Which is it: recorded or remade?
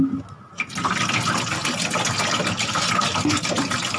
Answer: recorded